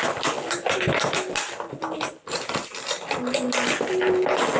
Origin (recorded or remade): recorded